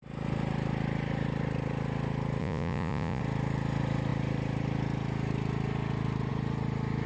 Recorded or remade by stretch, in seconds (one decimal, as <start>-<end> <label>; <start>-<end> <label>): 0.0-2.4 recorded; 2.4-3.2 remade; 3.2-7.1 recorded